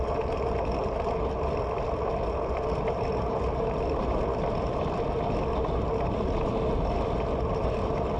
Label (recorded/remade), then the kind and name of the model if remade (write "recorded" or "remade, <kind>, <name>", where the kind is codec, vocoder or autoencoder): recorded